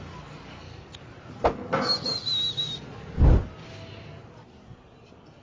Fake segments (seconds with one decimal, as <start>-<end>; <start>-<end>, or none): none